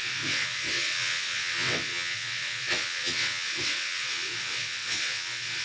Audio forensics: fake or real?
fake